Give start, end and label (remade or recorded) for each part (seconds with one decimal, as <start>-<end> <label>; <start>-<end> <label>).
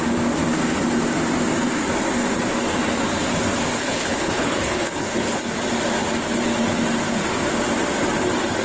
0.0-3.8 recorded; 3.8-5.4 remade; 5.4-8.6 recorded